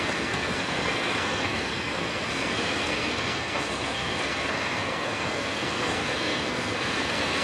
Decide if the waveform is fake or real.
fake